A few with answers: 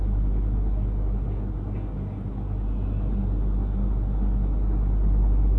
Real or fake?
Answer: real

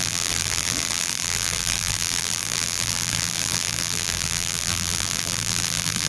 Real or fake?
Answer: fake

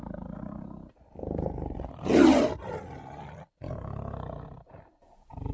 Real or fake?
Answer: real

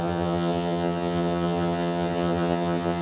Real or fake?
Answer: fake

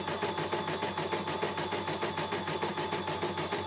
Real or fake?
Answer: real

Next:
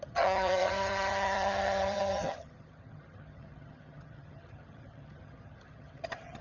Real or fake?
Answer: fake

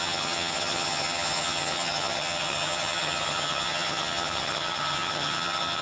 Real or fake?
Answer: fake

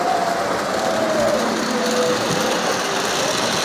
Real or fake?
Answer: real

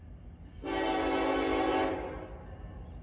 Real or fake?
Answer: real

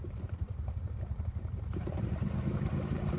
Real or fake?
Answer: fake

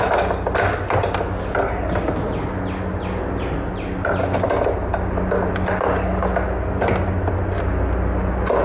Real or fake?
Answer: real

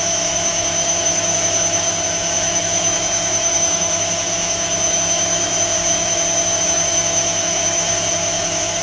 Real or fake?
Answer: fake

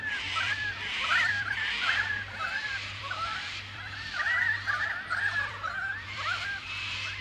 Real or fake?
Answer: fake